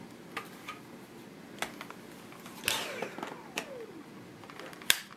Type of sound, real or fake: real